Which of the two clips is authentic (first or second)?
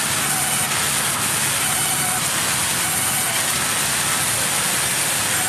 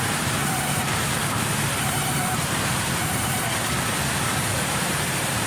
first